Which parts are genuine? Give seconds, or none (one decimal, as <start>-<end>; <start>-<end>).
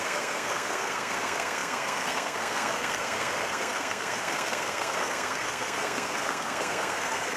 none